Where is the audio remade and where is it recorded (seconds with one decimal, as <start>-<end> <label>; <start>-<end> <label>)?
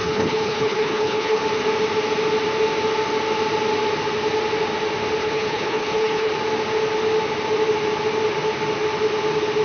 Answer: 0.0-1.4 remade; 1.4-5.2 recorded; 5.2-6.3 remade; 6.3-9.6 recorded